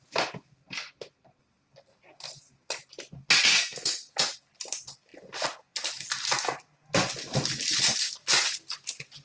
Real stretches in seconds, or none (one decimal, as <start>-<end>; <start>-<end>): 0.0-3.5; 4.1-9.2